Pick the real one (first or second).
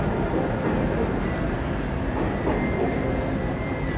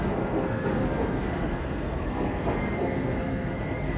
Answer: first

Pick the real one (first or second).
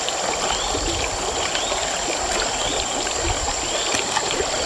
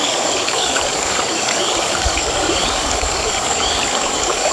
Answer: first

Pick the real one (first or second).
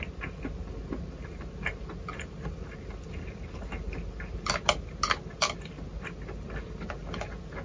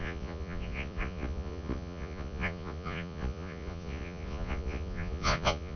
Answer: first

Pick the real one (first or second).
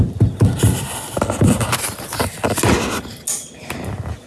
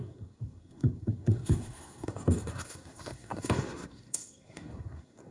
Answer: first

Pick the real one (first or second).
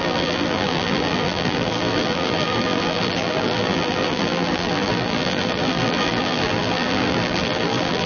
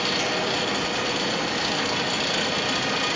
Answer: second